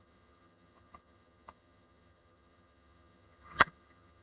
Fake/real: fake